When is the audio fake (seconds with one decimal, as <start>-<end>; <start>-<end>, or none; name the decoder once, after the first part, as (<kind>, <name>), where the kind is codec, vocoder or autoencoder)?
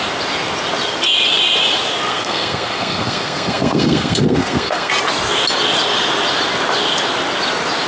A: 2.1-4.9 (codec, SNAC)